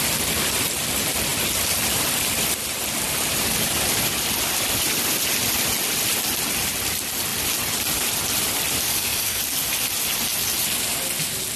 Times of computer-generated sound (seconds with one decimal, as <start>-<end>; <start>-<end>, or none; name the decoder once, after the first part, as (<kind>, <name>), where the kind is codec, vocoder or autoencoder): 8.9-9.4 (codec, SNAC)